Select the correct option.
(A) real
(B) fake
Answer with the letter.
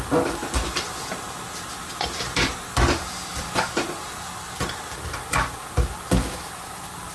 A